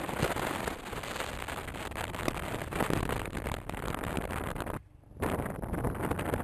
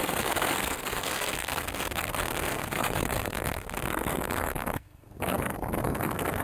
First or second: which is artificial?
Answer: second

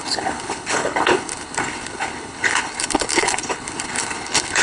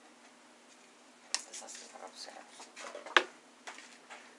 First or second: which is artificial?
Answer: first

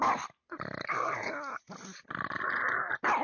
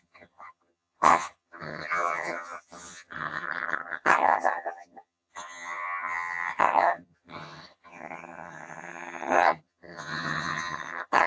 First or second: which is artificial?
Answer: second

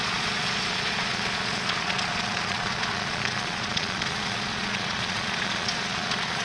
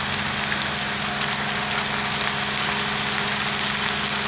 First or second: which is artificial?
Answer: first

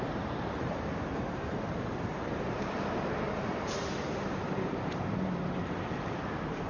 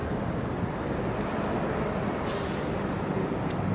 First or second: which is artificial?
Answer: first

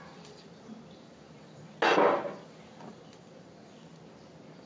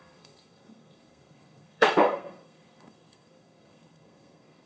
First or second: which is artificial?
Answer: second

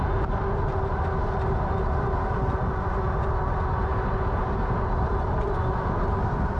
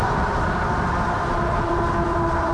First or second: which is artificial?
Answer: second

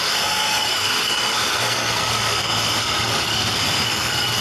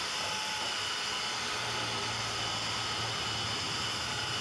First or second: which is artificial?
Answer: first